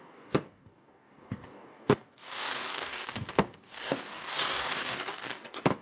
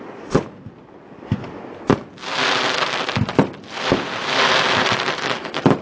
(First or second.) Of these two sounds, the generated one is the first